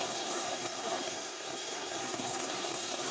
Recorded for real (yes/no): no